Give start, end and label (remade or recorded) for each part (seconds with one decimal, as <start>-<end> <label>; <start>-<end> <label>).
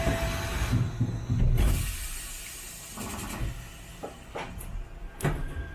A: 0.0-5.7 recorded